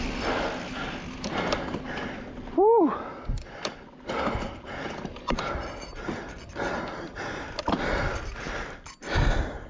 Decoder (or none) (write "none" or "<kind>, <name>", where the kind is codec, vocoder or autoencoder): none